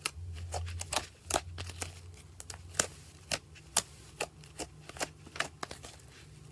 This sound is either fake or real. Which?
real